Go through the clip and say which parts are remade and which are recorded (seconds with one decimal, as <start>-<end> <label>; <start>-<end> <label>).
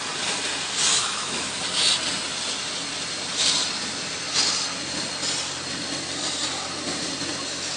0.0-0.9 recorded; 0.9-1.5 remade; 1.5-7.8 recorded